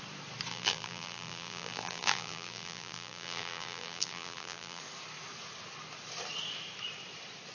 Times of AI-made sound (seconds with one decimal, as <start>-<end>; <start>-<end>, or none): 0.5-4.8